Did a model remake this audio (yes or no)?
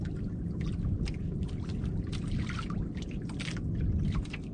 no